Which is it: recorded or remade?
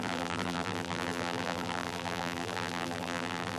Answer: remade